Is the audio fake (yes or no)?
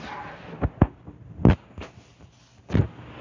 no